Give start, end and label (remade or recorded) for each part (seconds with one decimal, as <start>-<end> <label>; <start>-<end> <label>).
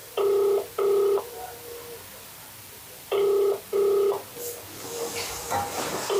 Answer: 0.0-6.2 recorded